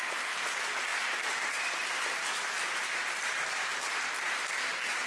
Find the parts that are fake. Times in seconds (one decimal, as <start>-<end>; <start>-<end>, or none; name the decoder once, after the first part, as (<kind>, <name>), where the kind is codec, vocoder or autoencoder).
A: 0.0-0.9 (vocoder, BigVGAN v2); 1.4-5.1